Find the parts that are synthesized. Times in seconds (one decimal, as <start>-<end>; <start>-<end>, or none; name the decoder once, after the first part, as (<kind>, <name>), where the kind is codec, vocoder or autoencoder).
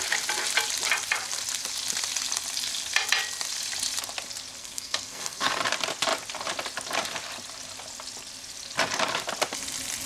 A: 4.6-5.6 (codec, SNAC)